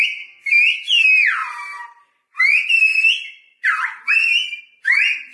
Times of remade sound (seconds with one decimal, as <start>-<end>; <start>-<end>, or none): 1.4-4.6